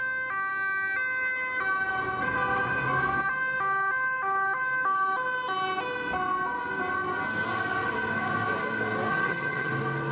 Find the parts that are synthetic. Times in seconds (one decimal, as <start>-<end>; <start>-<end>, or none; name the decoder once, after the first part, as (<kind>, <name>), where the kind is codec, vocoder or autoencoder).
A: 9.1-9.7 (vocoder, HiFi-GAN)